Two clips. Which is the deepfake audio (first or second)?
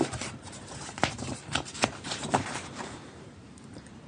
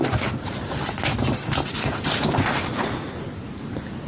first